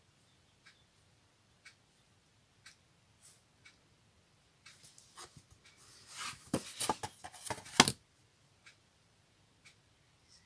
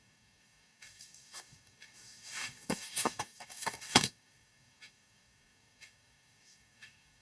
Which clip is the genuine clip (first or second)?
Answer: first